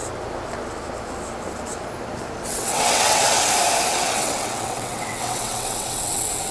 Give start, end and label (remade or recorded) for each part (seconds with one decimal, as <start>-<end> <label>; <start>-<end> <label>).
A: 0.0-2.5 recorded; 2.5-3.5 remade; 3.5-3.9 recorded; 3.9-6.5 remade

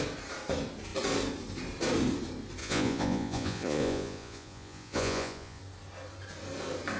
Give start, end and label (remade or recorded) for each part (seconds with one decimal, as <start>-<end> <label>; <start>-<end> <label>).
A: 0.0-2.6 recorded; 2.6-5.6 remade; 5.6-7.0 recorded